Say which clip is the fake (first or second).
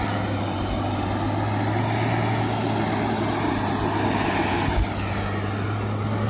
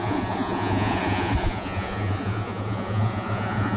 second